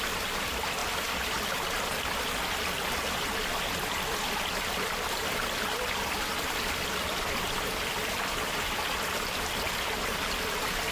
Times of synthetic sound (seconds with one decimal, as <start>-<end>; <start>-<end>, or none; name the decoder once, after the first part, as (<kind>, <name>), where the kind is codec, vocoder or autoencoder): none